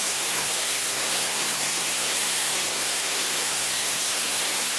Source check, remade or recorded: remade